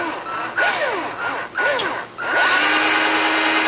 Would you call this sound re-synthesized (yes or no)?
no